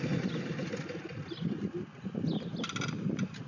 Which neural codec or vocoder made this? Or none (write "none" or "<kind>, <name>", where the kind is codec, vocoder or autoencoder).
none